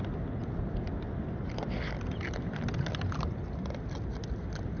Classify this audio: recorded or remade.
recorded